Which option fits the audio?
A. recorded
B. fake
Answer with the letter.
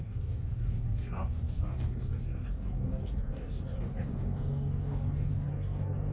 B